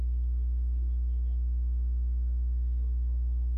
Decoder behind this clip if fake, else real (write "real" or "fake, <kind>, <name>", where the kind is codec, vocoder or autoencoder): real